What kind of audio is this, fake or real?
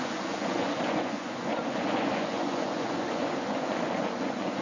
fake